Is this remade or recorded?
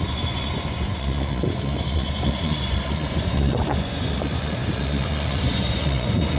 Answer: remade